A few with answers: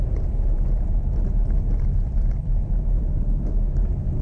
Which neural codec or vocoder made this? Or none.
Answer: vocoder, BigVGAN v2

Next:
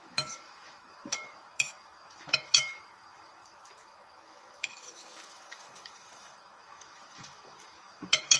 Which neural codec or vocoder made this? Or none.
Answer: autoencoder, DAC-VAE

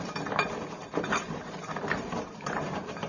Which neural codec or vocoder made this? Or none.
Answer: vocoder, BigVGAN v2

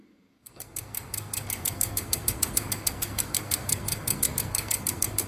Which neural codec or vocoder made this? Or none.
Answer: codec, SNAC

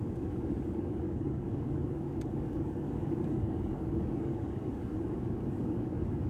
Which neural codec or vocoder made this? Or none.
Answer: codec, DAC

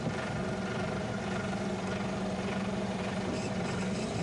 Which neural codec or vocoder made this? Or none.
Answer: vocoder, BigVGAN v2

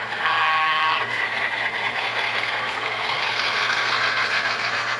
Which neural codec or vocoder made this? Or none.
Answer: codec, SNAC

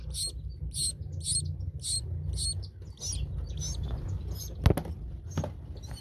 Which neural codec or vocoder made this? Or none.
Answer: none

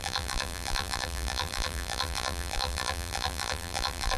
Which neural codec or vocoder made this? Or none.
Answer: vocoder, BigVGAN v2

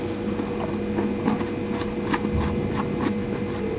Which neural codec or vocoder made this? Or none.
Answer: none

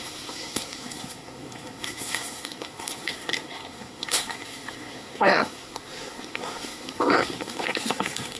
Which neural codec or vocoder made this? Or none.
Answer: codec, SNAC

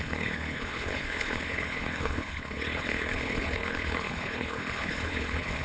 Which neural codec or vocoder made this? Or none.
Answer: codec, HILCodec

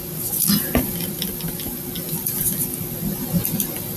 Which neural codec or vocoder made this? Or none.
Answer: none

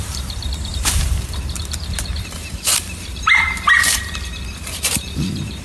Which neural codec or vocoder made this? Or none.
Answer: vocoder, BigVGAN v2